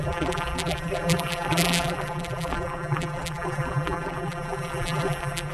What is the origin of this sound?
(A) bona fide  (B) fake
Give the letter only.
B